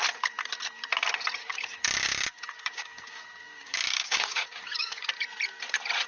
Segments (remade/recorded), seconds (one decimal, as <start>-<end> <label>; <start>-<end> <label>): 0.0-1.4 recorded; 1.4-5.1 remade; 5.1-6.1 recorded